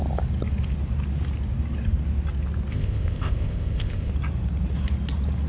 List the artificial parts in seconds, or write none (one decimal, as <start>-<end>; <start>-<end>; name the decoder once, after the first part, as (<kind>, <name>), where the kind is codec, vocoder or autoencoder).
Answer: 2.7-4.1 (codec, ZipCodec)